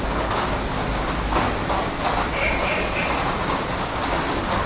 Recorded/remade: recorded